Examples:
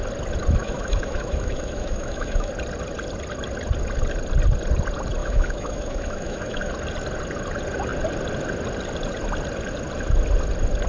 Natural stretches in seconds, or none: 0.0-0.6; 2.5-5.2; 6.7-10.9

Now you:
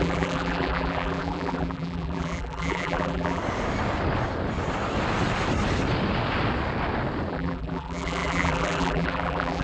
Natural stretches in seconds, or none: 3.4-7.3

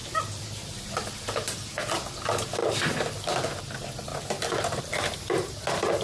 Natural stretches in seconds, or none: 1.7-4.1; 4.8-6.0

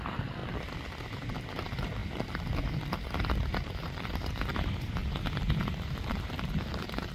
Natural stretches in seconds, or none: 0.4-1.4; 2.0-3.5; 5.0-5.7

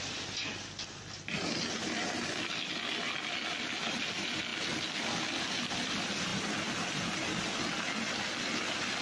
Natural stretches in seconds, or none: 0.0-9.0